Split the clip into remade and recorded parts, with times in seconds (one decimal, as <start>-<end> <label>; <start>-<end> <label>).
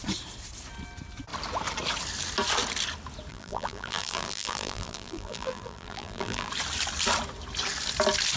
0.0-3.3 recorded; 3.3-6.5 remade; 6.5-8.4 recorded